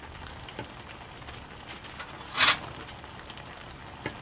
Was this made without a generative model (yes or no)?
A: yes